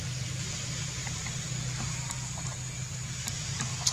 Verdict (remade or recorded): recorded